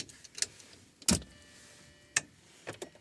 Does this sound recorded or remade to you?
recorded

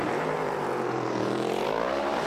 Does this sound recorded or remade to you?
remade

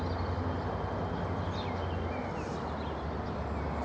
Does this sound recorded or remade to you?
recorded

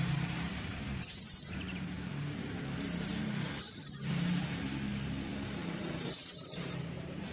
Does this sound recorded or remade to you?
remade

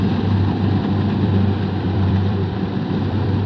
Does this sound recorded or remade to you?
remade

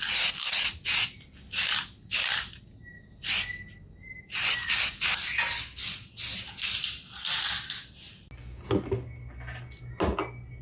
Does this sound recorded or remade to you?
recorded